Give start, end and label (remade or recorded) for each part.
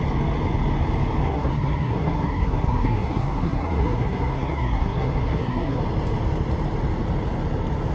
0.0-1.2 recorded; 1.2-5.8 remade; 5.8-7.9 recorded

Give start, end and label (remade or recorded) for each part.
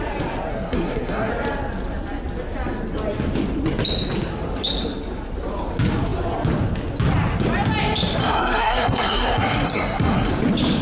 0.0-0.5 recorded; 0.5-1.3 remade; 1.3-8.2 recorded; 8.2-10.3 remade; 10.3-10.8 recorded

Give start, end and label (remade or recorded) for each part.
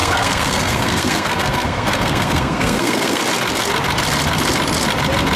0.0-3.2 remade; 3.2-5.4 recorded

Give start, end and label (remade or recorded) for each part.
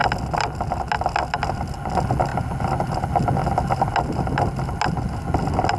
0.0-5.8 recorded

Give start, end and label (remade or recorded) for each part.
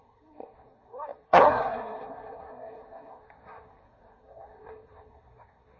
0.0-5.8 remade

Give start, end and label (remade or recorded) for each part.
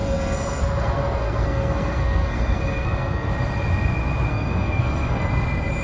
0.0-3.3 remade; 3.3-4.3 recorded; 4.3-5.3 remade; 5.3-5.8 recorded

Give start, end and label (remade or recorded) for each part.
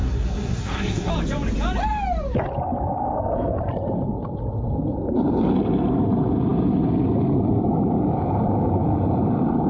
0.0-1.1 remade; 1.1-9.7 recorded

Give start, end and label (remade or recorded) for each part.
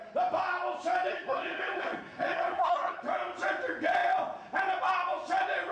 0.0-1.1 recorded; 1.1-3.0 remade; 3.0-5.7 recorded